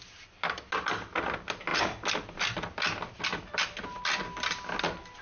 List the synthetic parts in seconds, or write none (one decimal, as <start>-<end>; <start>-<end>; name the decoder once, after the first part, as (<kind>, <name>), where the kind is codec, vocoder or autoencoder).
none

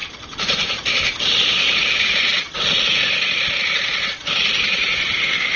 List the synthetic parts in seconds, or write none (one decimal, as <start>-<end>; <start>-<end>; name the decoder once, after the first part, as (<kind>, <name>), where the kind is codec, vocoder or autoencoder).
0.0-2.8 (vocoder, BigVGAN v2); 3.6-5.1

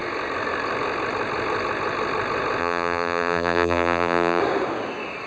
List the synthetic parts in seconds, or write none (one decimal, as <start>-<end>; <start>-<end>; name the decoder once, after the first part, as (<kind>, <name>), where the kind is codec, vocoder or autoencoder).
2.6-4.4 (vocoder, BigVGAN v2)

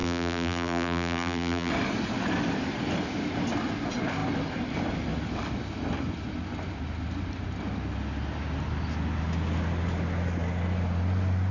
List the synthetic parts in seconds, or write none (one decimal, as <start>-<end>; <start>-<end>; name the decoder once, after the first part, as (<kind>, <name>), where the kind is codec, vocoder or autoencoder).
0.0-1.7 (vocoder, BigVGAN v2)

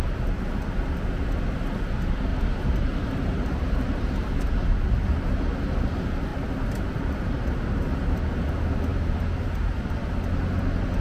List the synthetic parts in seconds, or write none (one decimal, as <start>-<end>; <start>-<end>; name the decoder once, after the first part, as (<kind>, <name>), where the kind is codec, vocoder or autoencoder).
2.3-4.3 (vocoder, BigVGAN v2); 6.3-8.2; 8.9-10.2

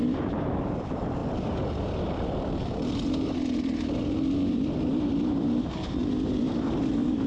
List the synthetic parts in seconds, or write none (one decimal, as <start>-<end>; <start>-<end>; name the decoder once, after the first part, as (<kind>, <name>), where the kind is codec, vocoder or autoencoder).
0.0-6.0 (vocoder, BigVGAN v2); 6.8-7.3